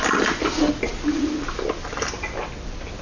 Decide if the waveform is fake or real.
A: fake